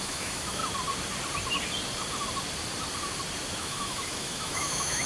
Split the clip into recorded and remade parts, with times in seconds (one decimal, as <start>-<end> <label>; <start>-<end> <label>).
0.0-0.6 remade; 0.6-3.6 recorded; 3.6-5.1 remade